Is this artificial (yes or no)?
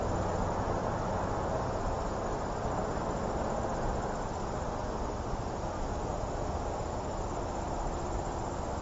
no